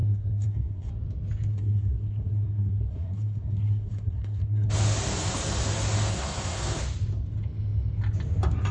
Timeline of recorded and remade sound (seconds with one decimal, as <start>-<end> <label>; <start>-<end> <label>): 0.0-0.9 remade; 0.9-1.5 recorded; 1.5-4.7 remade; 4.7-6.1 recorded; 6.1-6.8 remade; 6.8-8.7 recorded